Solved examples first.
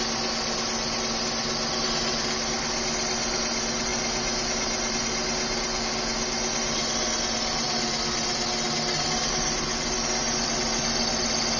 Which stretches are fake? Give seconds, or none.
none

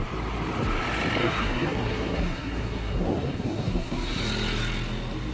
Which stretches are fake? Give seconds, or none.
1.2-4.2 (codec, SNAC)

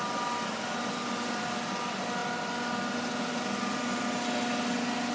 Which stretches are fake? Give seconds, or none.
none

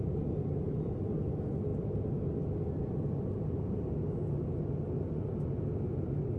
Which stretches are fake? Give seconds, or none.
none

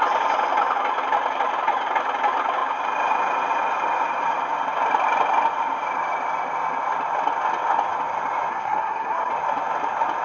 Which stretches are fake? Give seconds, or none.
8.5-9.3 (codec, SNAC)